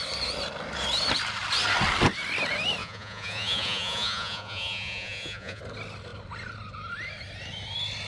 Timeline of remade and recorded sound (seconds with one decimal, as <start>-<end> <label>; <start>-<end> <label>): 0.0-2.8 recorded; 2.8-5.6 remade; 5.6-8.1 recorded